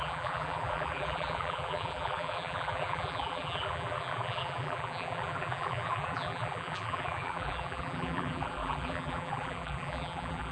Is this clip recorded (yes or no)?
no